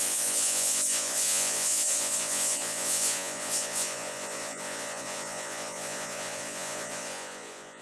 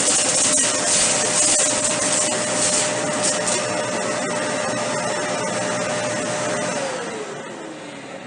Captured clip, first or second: second